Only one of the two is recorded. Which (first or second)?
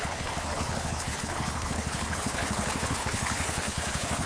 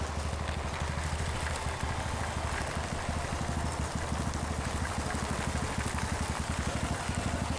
second